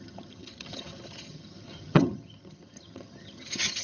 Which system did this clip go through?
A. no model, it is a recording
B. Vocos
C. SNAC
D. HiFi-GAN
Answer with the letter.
D